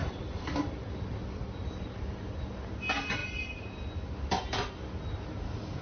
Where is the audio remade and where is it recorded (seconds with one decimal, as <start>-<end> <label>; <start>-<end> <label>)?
0.0-2.1 remade; 2.1-5.8 recorded